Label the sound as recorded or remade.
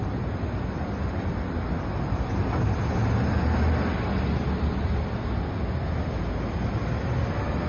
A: recorded